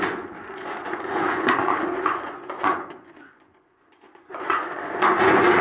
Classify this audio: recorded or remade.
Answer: remade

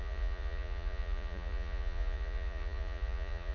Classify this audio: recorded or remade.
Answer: remade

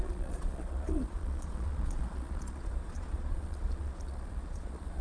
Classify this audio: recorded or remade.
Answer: remade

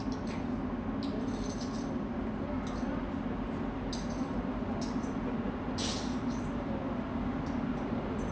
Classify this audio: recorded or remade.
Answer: recorded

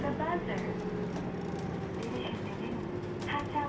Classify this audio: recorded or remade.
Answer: recorded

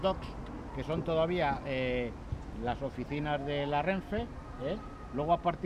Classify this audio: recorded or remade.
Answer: recorded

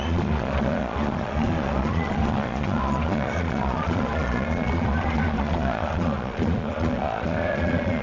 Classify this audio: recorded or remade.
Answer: remade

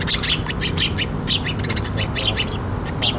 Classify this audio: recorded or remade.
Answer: recorded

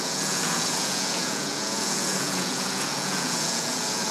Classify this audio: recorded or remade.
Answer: remade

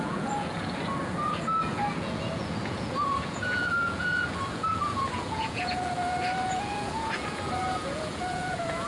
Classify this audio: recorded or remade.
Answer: remade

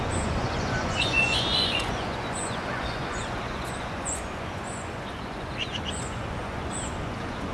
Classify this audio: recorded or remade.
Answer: remade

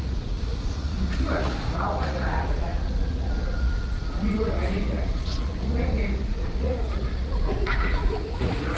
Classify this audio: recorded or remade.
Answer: remade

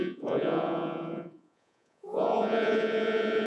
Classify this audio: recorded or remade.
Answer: remade